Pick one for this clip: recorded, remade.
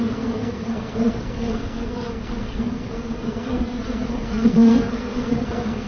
remade